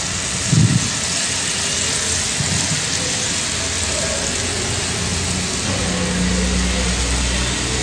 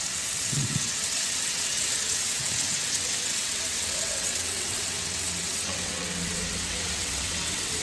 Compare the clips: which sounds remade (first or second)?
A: second